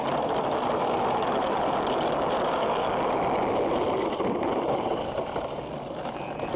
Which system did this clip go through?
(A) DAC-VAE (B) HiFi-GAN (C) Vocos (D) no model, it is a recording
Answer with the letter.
D